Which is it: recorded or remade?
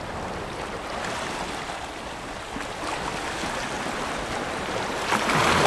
recorded